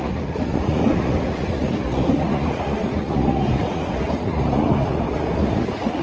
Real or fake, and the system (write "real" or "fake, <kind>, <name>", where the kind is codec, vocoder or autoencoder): fake, vocoder, Vocos